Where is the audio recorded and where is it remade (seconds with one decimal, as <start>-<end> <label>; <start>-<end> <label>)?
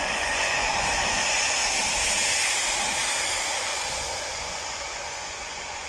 0.0-1.6 remade; 1.6-3.4 recorded; 3.4-5.9 remade